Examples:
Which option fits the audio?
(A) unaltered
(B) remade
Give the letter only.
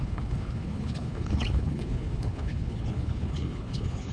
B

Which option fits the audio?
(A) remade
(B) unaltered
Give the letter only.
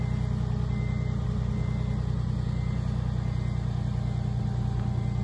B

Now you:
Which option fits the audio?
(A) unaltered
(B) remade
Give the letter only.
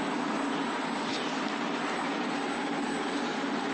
A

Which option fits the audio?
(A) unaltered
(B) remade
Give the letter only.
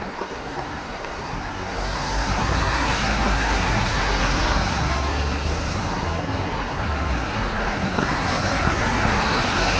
B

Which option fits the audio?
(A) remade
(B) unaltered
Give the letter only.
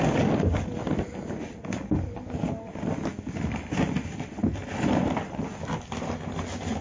B